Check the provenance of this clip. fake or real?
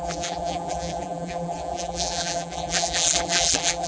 fake